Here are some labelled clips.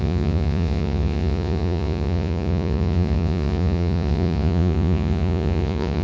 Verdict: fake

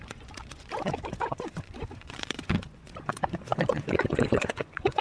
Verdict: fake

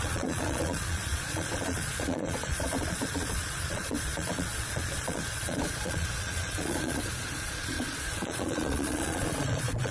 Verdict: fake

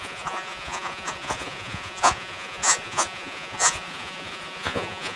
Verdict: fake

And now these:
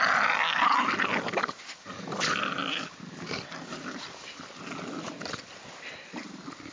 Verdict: real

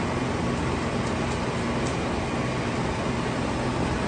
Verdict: real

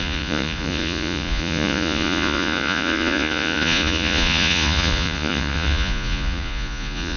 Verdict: fake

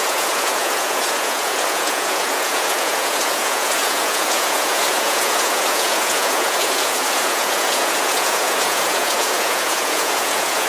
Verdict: fake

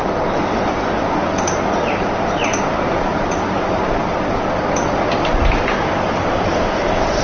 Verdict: real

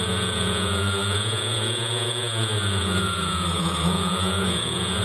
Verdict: fake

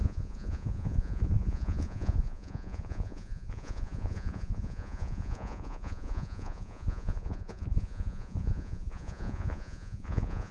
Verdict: fake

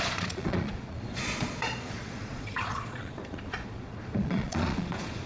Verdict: fake